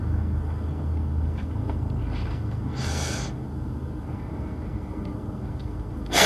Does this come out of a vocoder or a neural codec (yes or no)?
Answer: yes